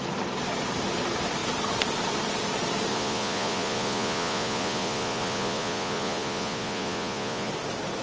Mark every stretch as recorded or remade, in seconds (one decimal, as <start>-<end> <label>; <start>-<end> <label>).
0.0-2.9 recorded; 2.9-7.5 remade; 7.5-8.0 recorded